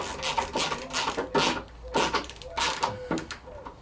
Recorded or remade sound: recorded